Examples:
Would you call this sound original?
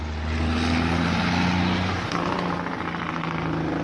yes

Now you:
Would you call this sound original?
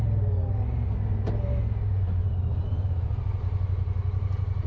yes